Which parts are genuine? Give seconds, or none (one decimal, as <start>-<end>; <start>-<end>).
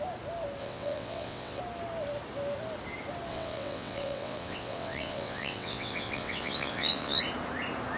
0.0-0.6; 1.6-3.3; 7.2-8.0